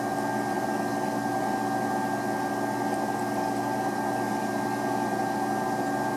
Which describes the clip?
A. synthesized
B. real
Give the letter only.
B